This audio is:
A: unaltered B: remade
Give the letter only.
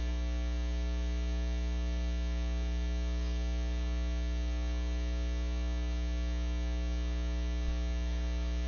A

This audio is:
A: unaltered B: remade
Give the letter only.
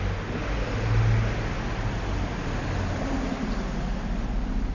A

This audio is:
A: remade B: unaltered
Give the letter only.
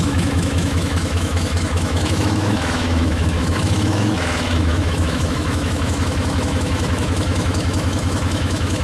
A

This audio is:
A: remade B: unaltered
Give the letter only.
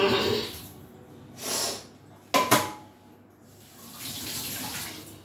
B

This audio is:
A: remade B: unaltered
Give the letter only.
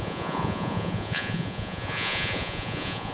A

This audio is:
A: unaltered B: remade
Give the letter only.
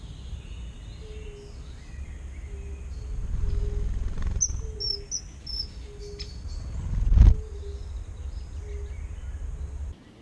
A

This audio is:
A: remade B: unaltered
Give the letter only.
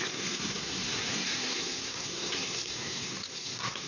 A